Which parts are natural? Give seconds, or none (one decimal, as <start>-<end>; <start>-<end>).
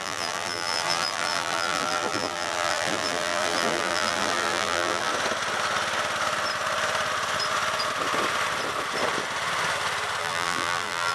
5.1-10.2